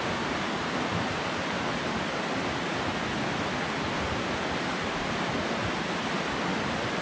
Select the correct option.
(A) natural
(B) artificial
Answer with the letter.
A